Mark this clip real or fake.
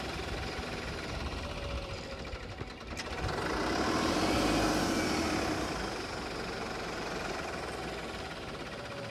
real